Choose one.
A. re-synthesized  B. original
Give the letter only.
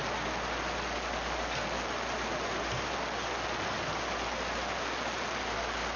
B